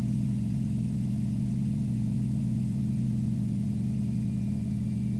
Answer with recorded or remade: remade